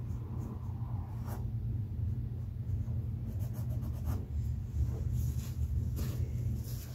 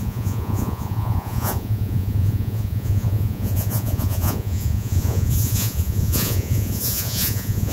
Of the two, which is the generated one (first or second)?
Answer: second